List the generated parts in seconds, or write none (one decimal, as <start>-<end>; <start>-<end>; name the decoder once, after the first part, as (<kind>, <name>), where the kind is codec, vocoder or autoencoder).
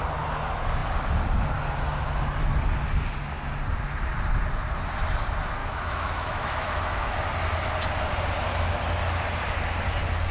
5.6-7.1 (autoencoder, DAC-VAE)